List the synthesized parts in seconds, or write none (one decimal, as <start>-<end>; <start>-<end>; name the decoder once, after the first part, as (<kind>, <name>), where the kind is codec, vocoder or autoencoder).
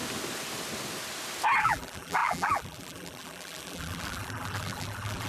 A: 1.6-5.3 (vocoder, BigVGAN v2)